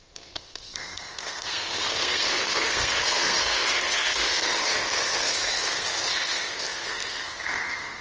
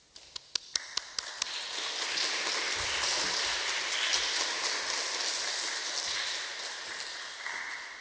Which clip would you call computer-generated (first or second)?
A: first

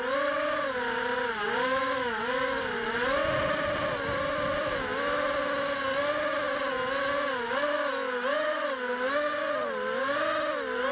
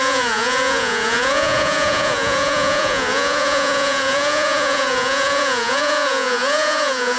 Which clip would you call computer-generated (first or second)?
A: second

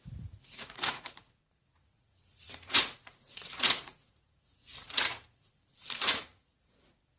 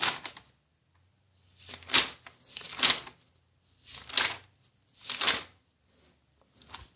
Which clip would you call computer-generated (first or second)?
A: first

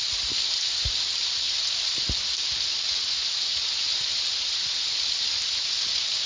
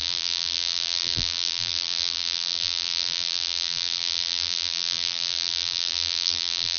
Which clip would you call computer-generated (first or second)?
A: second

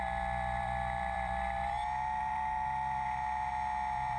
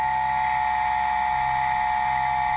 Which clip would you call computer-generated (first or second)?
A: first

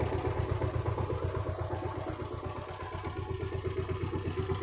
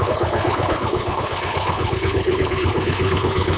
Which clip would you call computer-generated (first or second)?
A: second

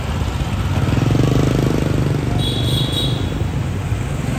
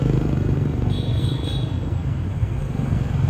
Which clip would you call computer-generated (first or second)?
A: second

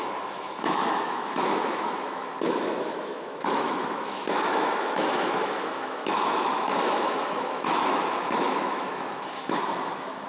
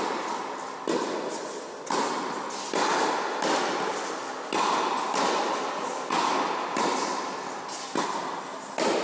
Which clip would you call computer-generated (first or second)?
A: first